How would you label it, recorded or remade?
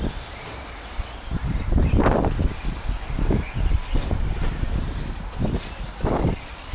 recorded